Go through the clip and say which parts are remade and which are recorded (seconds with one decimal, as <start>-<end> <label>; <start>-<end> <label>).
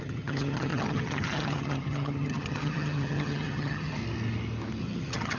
0.0-4.0 remade; 4.0-4.8 recorded; 4.8-5.4 remade